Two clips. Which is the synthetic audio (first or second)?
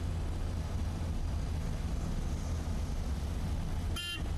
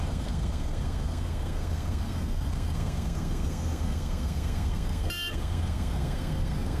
second